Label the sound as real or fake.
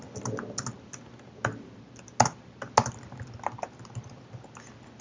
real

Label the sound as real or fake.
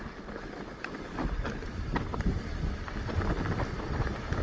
real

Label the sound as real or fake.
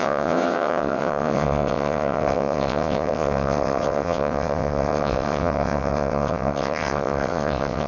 fake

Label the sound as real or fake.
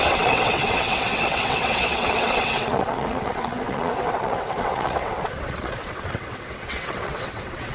fake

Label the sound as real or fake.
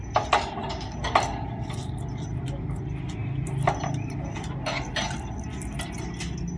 real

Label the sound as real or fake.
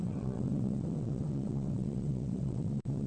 fake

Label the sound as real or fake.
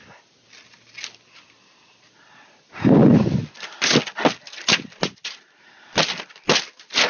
real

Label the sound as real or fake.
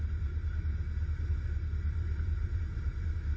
real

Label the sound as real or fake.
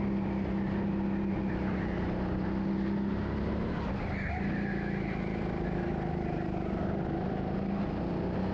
real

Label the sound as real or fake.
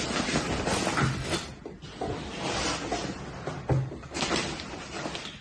real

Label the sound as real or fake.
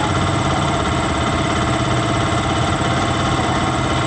real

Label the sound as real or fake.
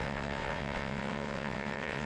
fake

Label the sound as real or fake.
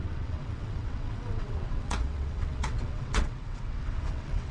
fake